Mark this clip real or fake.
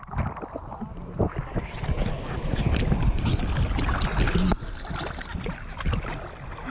real